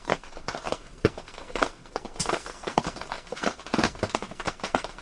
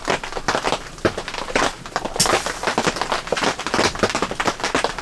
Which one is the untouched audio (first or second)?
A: second